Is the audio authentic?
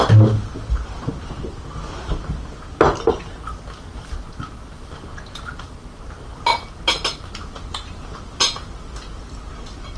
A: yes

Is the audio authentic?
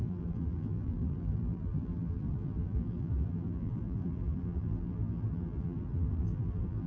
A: no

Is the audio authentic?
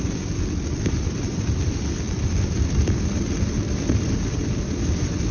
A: no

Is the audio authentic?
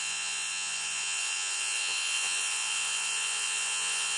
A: no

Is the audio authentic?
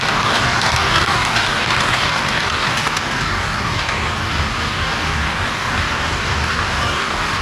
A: no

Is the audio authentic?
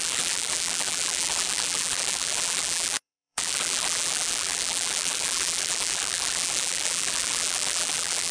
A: no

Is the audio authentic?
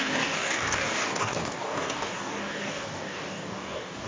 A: no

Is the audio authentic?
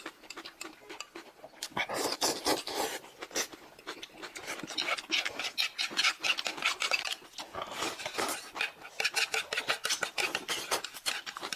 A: yes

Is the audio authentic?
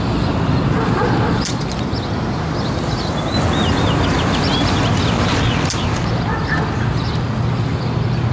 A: yes